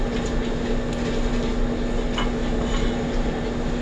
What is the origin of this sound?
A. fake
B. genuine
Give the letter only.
B